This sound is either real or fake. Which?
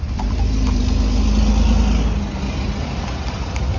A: real